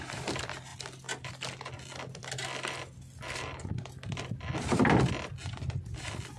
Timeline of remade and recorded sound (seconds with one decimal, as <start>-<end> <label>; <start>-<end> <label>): 0.0-6.4 recorded